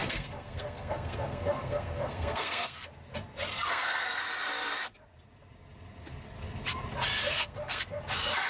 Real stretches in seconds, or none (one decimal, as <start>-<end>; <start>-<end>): 2.9-3.5; 4.2-7.2; 8.0-8.5